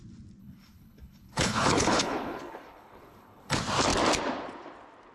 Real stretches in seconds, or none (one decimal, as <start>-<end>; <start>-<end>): 0.0-0.4; 3.5-5.1